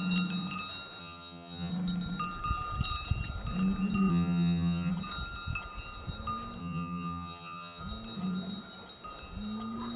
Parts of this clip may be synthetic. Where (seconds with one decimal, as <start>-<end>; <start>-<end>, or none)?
1.0-1.7; 4.1-4.9; 6.6-7.8